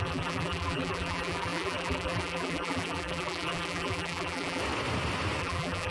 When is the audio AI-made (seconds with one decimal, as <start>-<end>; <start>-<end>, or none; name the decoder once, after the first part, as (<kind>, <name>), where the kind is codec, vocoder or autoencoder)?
0.0-4.6 (vocoder, BigVGAN v2); 5.4-5.9

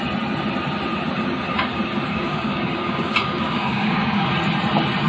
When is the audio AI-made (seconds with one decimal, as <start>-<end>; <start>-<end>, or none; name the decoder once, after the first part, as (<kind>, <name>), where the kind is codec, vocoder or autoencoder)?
2.1-4.3 (codec, DAC)

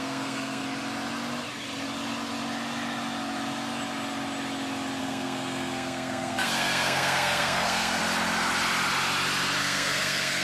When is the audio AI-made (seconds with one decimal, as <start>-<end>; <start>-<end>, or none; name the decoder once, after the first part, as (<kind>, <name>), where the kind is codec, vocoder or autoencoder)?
0.0-0.6 (codec, SNAC); 5.0-8.0; 9.6-10.4

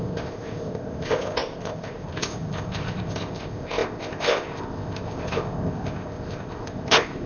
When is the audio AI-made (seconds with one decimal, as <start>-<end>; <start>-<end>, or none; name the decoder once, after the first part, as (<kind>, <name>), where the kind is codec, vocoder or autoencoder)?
0.0-7.3 (codec, ZipCodec)

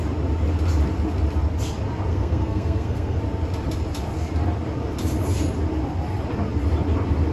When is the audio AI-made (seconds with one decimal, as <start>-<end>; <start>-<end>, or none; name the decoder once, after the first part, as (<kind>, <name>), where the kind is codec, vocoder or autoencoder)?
2.1-3.2 (codec, SNAC)